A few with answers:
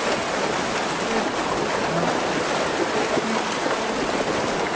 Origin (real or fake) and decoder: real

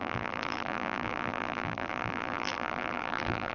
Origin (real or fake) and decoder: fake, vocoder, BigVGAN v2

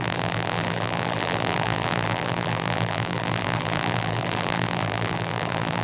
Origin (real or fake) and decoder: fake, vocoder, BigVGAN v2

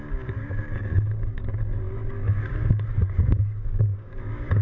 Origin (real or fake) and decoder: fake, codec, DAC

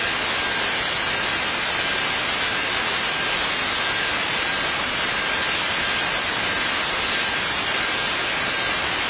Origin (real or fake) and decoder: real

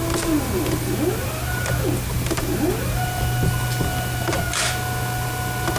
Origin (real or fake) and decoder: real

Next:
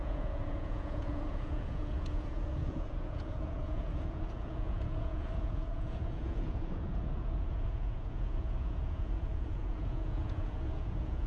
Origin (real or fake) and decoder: fake, vocoder, Vocos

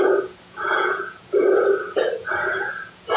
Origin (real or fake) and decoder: fake, vocoder, Vocos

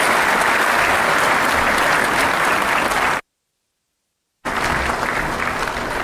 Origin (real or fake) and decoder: real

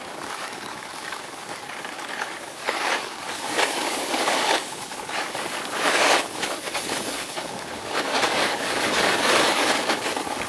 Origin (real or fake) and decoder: fake, codec, DAC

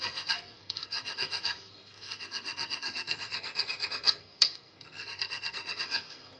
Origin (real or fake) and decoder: fake, codec, SNAC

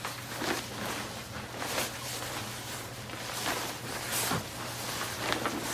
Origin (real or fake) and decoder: real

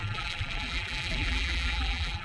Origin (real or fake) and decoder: fake, vocoder, BigVGAN v2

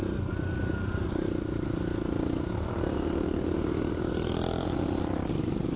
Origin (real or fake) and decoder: real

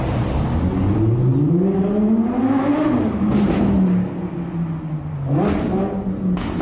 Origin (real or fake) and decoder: real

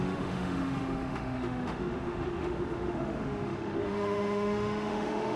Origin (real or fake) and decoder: fake, autoencoder, DAC-VAE